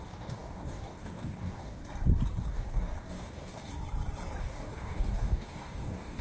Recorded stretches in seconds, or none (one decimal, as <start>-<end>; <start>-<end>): 1.8-2.5; 3.7-4.4